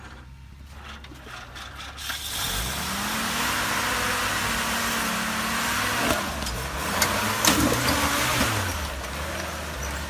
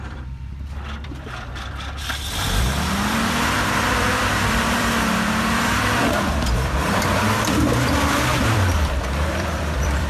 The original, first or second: first